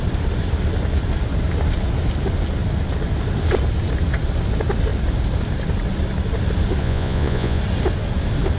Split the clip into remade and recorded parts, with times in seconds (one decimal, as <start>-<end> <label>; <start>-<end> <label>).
0.0-6.8 recorded; 6.8-7.6 remade; 7.6-8.6 recorded